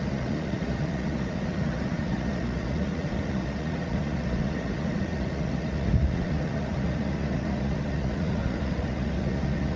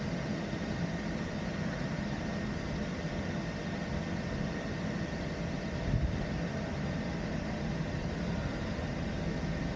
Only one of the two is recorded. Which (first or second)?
second